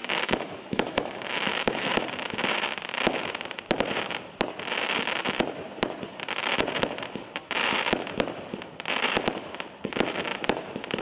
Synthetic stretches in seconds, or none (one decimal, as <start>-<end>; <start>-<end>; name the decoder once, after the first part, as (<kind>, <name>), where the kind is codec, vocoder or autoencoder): 0.0-2.0 (autoencoder, DAC-VAE)